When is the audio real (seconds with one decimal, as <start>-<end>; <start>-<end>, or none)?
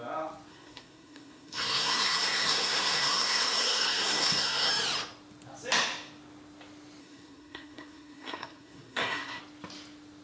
0.0-0.5; 4.7-7.0; 9.4-10.2